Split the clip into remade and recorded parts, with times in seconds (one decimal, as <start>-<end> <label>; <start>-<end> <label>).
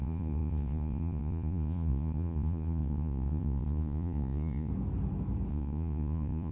0.0-4.7 remade; 4.7-5.5 recorded; 5.5-6.5 remade